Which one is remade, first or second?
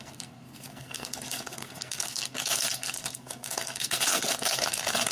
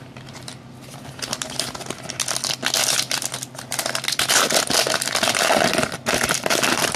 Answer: first